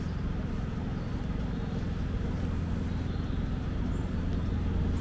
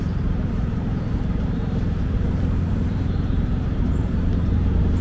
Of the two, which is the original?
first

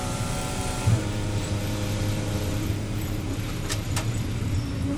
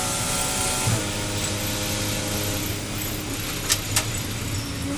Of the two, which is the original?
second